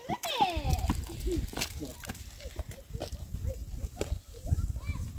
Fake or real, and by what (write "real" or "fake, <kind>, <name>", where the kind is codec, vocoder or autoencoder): real